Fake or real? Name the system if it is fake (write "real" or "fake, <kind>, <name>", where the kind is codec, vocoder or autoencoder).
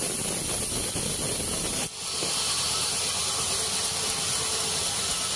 real